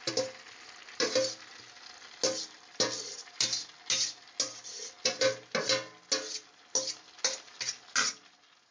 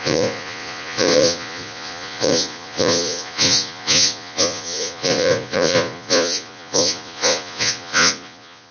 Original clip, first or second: first